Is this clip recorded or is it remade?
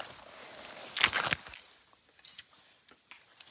recorded